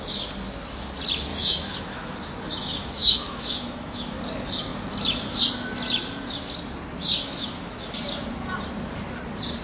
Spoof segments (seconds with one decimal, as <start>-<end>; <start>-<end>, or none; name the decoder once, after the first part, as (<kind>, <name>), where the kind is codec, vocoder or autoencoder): 1.3-4.2 (autoencoder, DAC-VAE); 7.2-7.9